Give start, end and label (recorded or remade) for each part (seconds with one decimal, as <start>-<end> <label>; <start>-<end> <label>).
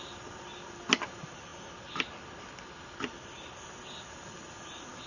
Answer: 0.0-5.1 recorded